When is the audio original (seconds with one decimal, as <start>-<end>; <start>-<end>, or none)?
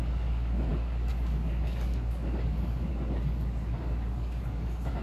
none